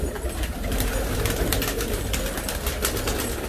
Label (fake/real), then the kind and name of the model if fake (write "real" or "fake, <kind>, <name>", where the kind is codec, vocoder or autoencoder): real